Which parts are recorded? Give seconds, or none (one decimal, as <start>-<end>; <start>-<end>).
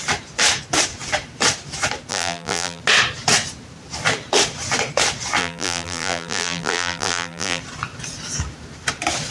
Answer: 0.0-2.1; 2.8-5.4; 7.6-9.3